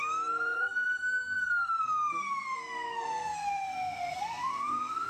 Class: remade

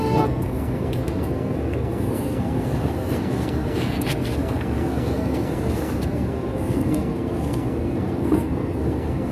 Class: remade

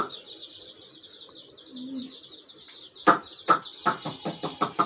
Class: recorded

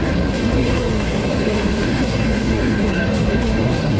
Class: remade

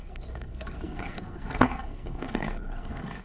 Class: remade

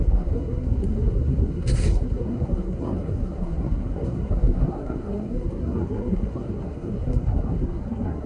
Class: remade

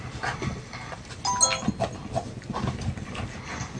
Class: recorded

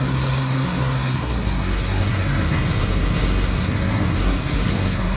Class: remade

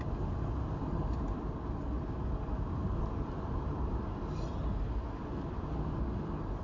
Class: recorded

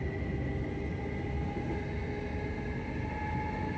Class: recorded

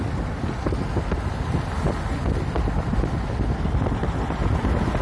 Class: recorded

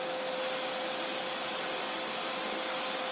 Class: recorded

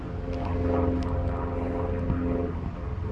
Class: recorded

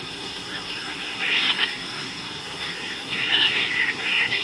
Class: remade